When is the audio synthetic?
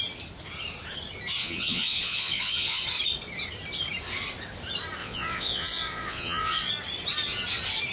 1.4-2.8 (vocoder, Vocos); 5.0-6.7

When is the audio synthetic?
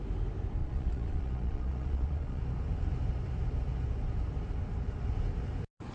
0.6-2.4 (vocoder, Vocos)